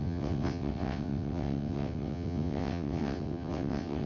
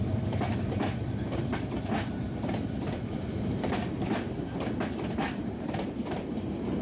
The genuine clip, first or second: second